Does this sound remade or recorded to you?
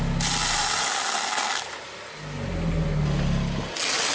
recorded